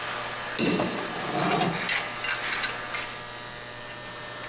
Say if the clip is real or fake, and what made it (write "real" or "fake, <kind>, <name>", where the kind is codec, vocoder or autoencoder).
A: real